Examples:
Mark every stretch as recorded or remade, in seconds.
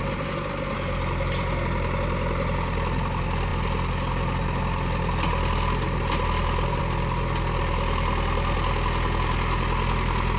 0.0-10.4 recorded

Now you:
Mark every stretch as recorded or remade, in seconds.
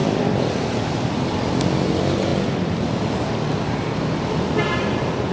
0.0-5.3 recorded